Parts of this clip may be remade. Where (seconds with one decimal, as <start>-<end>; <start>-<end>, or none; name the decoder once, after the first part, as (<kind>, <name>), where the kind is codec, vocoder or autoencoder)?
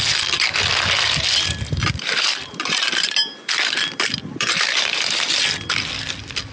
1.8-5.4 (vocoder, BigVGAN v2)